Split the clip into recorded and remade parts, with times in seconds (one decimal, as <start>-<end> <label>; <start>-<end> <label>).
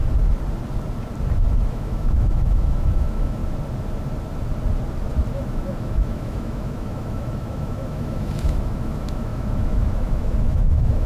0.0-1.7 recorded; 1.7-3.4 remade; 3.4-5.3 recorded; 5.3-11.1 remade